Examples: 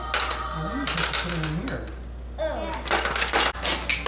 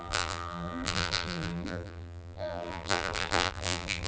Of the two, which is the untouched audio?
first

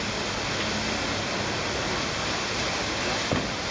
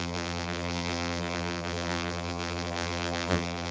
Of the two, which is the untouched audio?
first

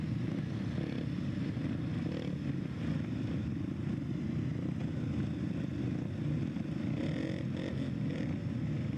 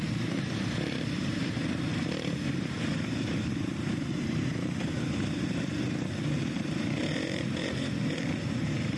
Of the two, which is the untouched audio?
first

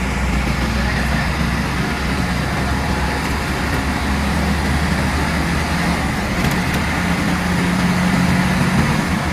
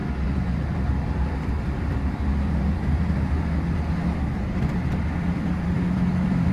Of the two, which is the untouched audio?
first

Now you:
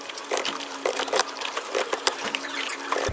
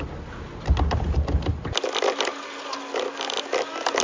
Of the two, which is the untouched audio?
second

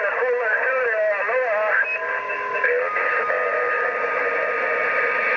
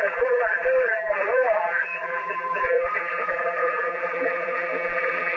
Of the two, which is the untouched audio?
first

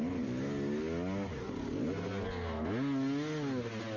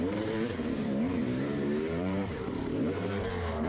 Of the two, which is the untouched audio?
first